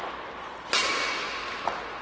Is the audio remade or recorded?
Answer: recorded